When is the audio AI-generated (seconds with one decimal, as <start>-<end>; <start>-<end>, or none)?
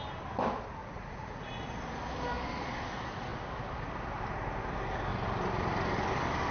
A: 0.8-1.7